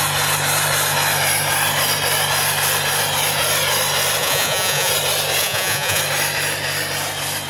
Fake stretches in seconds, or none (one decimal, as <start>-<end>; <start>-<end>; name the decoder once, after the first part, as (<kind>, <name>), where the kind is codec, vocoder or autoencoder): 4.2-4.9 (vocoder, Vocos); 5.4-6.0